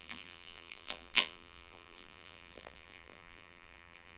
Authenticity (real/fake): fake